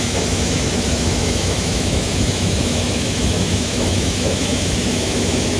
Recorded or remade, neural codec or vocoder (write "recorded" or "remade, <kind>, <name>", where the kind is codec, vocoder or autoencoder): remade, autoencoder, DAC-VAE